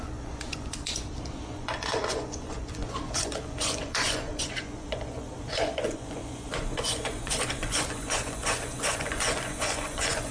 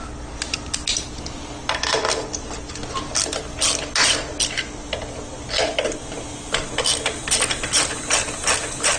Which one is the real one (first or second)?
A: second